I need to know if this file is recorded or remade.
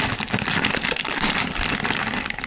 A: remade